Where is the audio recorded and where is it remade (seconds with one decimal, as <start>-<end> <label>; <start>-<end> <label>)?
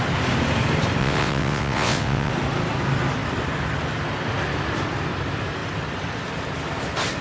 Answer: 0.0-1.0 recorded; 1.0-2.3 remade; 2.3-7.2 recorded